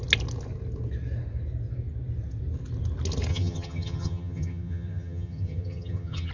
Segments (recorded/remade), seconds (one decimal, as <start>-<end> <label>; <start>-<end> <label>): 0.0-3.3 recorded; 3.3-6.3 remade